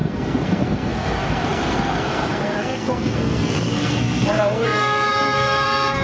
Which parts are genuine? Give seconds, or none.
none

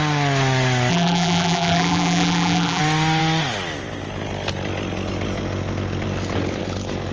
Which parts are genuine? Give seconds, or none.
0.0-0.9; 2.8-7.1

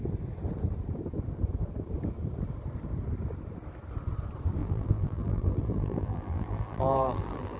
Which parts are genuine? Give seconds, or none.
0.0-4.6

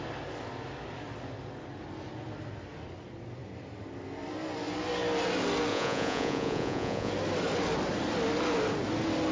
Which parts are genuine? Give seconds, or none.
0.0-5.7; 7.1-9.3

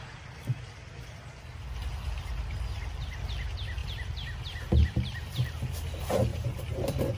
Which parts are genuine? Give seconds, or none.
0.0-3.8; 5.7-6.3